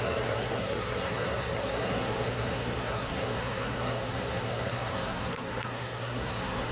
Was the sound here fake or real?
fake